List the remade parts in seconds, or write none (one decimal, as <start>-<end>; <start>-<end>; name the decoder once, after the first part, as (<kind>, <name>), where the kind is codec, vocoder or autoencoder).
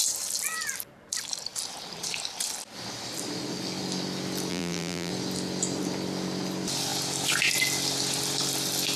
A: 4.5-5.1 (vocoder, BigVGAN v2)